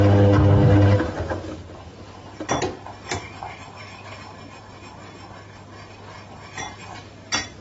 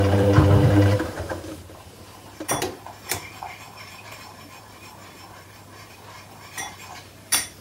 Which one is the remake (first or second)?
second